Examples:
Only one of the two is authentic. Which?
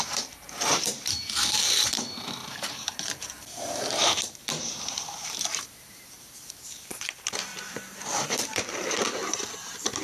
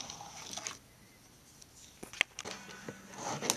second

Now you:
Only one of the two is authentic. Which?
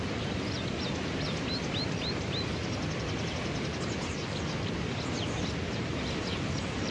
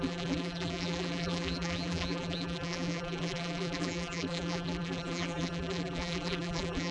first